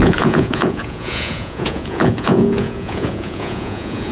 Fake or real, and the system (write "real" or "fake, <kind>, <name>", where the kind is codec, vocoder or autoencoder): fake, vocoder, Vocos